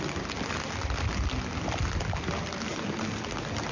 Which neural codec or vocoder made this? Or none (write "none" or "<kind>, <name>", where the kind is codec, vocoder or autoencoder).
none